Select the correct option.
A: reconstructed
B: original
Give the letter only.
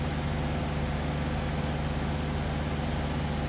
B